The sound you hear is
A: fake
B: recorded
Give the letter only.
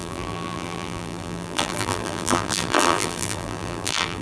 A